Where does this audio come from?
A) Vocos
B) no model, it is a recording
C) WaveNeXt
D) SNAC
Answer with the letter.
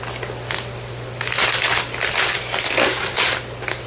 B